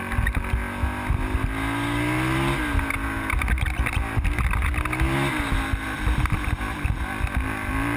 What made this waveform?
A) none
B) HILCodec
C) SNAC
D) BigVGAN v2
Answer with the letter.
A